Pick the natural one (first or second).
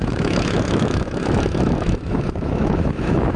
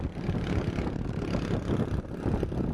second